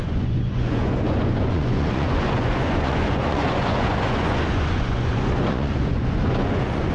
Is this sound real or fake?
fake